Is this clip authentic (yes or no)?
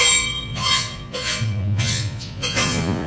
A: no